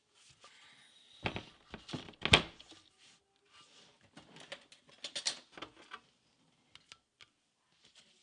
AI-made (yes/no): no